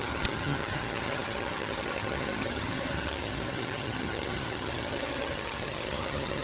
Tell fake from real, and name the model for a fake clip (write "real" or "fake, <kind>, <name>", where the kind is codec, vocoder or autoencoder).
fake, vocoder, HiFi-GAN